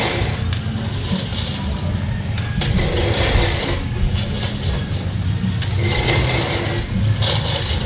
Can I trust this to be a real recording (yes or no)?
yes